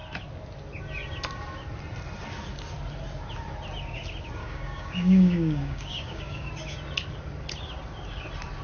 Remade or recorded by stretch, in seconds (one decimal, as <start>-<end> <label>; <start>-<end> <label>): 0.0-4.4 recorded; 4.4-6.5 remade; 6.5-8.6 recorded